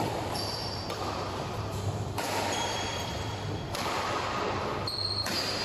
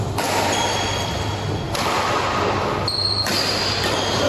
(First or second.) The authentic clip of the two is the second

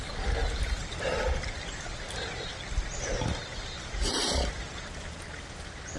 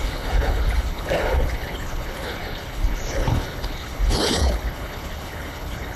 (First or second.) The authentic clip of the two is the first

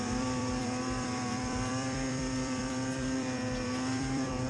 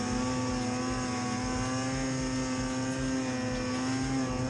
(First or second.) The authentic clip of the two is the second